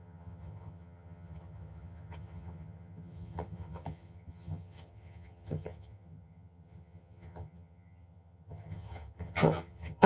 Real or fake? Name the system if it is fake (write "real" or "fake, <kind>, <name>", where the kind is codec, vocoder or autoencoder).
fake, vocoder, HiFi-GAN